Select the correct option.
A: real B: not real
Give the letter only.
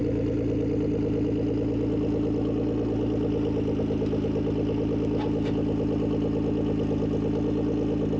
A